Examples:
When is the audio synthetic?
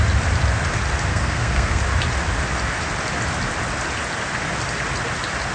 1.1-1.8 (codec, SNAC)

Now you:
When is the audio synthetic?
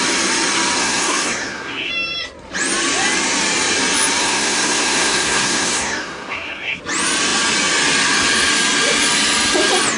0.8-1.9 (codec, SNAC); 4.2-6.8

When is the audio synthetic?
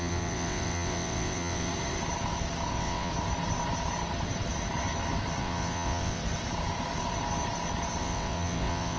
0.0-1.7 (vocoder, WaveNeXt); 2.7-3.1; 5.4-6.2; 8.0-9.0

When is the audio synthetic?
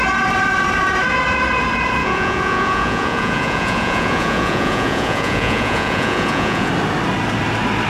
2.0-6.7 (vocoder, Vocos)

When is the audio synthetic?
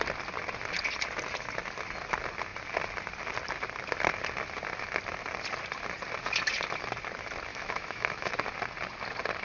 7.5-8.3 (autoencoder, DAC-VAE)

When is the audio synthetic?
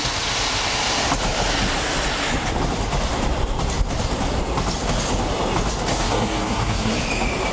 5.9-7.0 (codec, SNAC)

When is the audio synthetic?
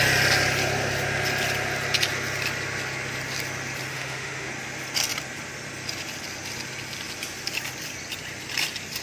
3.9-4.5 (autoencoder, DAC-VAE)